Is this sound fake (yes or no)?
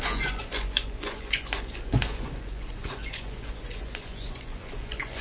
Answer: yes